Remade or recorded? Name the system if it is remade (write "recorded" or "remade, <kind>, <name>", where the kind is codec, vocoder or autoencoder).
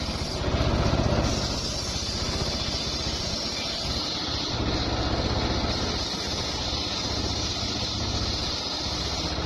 recorded